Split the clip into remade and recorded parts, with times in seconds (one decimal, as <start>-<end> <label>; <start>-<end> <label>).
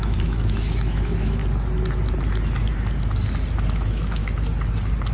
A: 0.0-1.4 remade; 1.4-3.7 recorded; 3.7-4.2 remade; 4.2-5.1 recorded